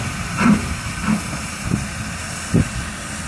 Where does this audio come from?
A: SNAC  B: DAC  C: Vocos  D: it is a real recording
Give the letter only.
D